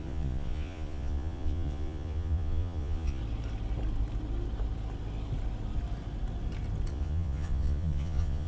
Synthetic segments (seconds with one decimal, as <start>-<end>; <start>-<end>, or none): 0.0-3.2; 6.9-8.5

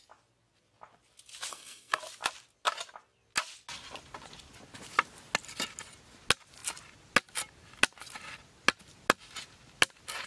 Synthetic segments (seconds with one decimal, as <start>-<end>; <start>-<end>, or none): 1.5-2.0